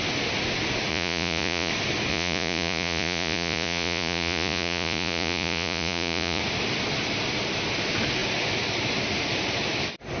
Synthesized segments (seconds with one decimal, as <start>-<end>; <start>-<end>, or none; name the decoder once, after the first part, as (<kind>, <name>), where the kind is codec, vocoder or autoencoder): 0.9-1.7 (vocoder, Vocos); 2.1-6.4

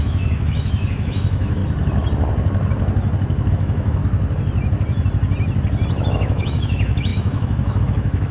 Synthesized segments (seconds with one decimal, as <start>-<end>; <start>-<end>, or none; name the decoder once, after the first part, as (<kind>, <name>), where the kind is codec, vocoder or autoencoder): 0.0-1.6 (autoencoder, DAC-VAE); 3.5-4.0; 6.1-8.3

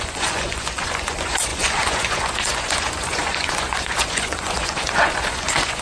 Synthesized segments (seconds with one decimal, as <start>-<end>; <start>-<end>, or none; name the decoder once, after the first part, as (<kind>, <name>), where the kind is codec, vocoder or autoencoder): 0.0-5.8 (vocoder, Vocos)

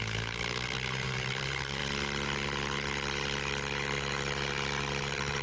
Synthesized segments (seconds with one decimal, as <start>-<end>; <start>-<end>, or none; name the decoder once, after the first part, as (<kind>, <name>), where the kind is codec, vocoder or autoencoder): 0.0-1.8 (vocoder, BigVGAN v2); 5.0-5.4